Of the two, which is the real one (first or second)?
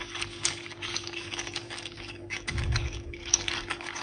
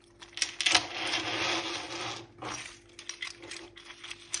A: second